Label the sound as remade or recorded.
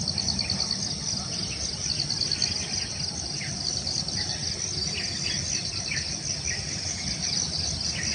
recorded